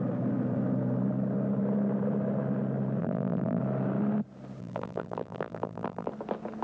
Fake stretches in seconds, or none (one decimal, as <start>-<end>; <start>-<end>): 3.0-3.6; 4.6-6.1